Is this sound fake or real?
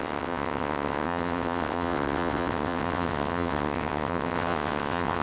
fake